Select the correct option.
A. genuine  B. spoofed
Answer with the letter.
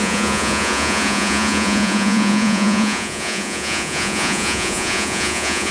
B